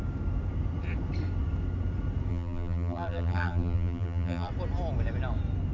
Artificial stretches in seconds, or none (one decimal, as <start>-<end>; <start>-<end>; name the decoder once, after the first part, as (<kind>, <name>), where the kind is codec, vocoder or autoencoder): 2.3-4.5 (vocoder, BigVGAN v2)